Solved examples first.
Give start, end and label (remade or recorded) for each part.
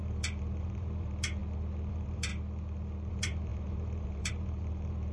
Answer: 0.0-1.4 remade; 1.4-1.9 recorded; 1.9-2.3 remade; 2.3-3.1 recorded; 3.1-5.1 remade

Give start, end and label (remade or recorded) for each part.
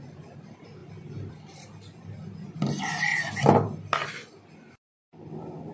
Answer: 0.0-5.7 recorded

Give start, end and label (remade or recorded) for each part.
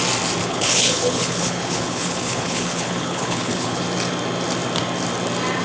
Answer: 0.0-0.4 recorded; 0.4-3.8 remade; 3.8-5.6 recorded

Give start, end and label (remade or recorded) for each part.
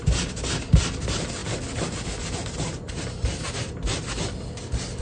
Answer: 0.0-5.0 recorded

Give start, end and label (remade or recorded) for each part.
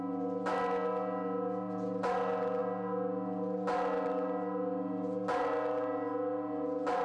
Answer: 0.0-7.0 recorded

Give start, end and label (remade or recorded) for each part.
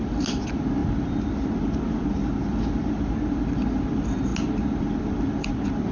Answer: 0.0-5.9 recorded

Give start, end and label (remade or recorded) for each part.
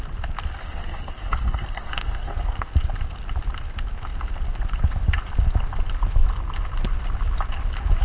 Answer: 0.0-0.6 recorded; 0.6-2.7 remade; 2.7-8.0 recorded